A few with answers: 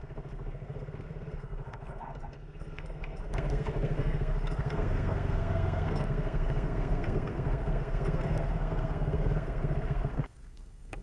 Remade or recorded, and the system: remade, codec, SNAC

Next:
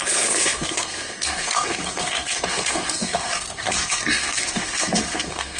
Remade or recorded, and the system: remade, codec, SNAC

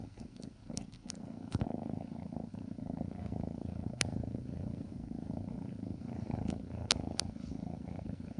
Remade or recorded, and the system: remade, codec, SNAC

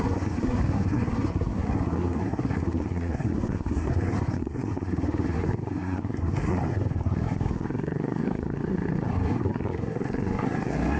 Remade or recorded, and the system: remade, codec, SNAC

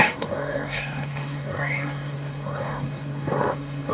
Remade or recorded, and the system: remade, codec, SNAC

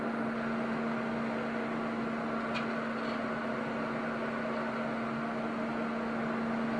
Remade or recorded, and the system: recorded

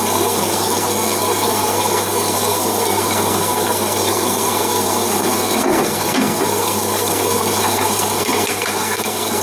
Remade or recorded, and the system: remade, codec, SNAC